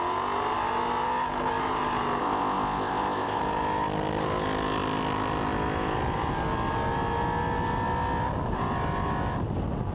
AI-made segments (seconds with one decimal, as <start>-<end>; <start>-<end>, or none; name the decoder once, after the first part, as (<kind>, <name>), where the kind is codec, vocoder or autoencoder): 2.2-3.4 (codec, ZipCodec)